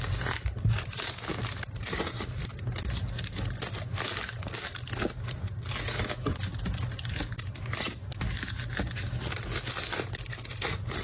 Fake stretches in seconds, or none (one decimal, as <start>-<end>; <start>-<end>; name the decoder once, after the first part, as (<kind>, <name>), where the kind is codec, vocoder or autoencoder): 1.3-2.6 (vocoder, BigVGAN v2)